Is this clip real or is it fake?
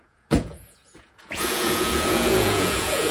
fake